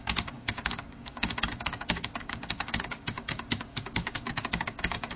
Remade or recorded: remade